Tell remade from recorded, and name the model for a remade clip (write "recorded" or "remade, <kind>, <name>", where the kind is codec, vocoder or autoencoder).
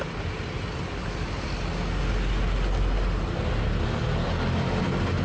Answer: recorded